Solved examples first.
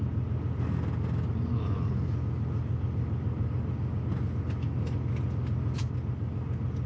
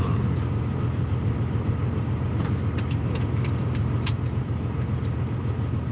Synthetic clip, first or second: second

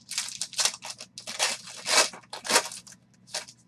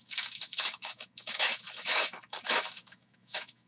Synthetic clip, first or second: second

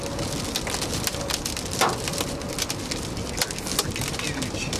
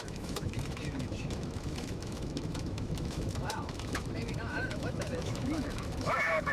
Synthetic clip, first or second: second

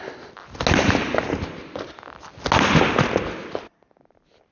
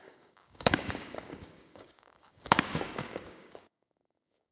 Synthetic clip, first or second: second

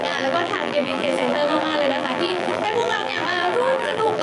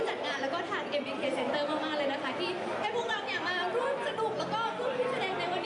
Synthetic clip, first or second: first